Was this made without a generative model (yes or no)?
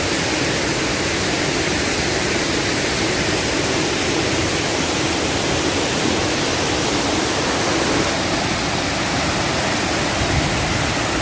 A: yes